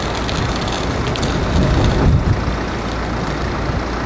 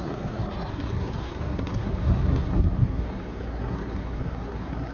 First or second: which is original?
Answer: first